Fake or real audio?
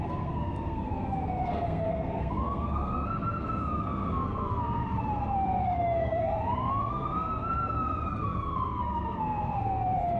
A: fake